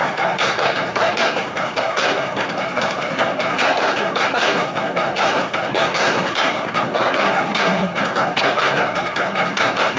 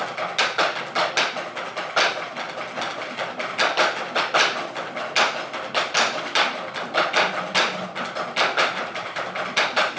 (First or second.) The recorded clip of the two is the second